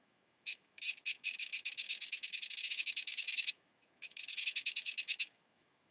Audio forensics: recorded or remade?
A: remade